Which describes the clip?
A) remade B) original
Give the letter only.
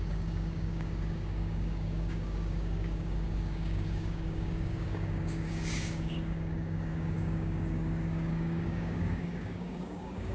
A